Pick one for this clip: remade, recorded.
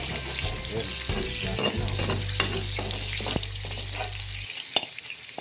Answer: recorded